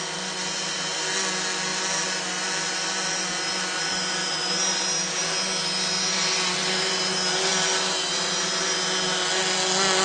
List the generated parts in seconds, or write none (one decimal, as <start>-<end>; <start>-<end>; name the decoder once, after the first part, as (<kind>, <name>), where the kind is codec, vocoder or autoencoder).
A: none